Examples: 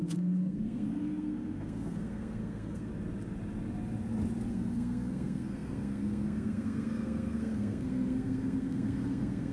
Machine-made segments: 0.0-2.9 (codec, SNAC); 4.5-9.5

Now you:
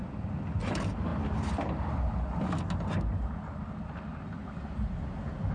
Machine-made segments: none

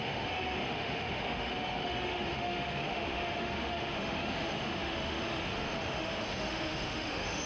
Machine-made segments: 0.0-7.5 (autoencoder, DAC-VAE)

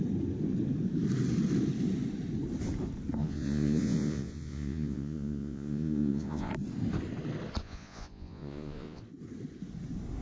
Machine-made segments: 3.2-6.5 (vocoder, Vocos); 7.6-9.0

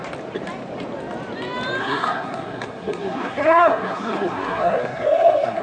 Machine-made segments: 1.8-5.6 (codec, SNAC)

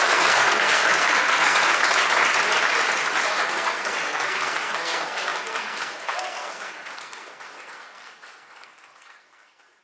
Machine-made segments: 0.0-1.8 (codec, SNAC); 3.3-9.8

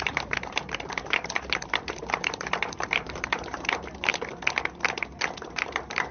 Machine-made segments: 0.0-4.1 (vocoder, BigVGAN v2); 5.4-6.1

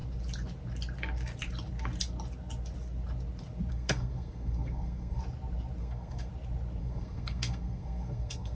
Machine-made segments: 3.7-5.2 (codec, SNAC); 5.8-6.3; 6.8-8.5